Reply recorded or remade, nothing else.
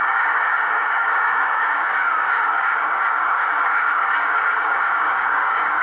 remade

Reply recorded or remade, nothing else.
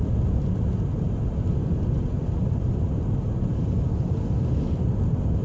recorded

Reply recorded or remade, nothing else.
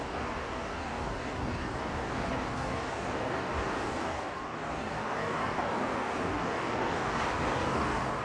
remade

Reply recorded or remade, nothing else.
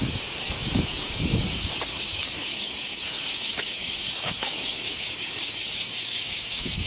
remade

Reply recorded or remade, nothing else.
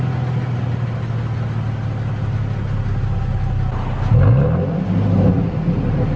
recorded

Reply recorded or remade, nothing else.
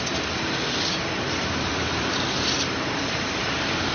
recorded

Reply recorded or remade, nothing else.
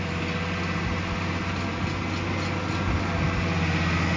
recorded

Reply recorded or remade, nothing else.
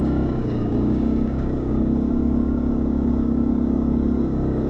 remade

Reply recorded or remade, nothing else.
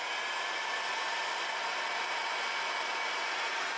recorded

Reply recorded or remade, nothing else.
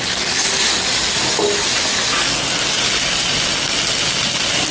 recorded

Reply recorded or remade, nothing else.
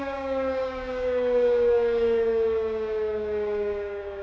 remade